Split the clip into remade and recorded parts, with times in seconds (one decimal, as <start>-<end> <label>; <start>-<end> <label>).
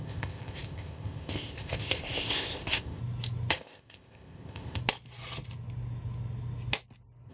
0.0-3.0 remade; 3.0-3.5 recorded; 3.5-4.8 remade; 4.8-7.3 recorded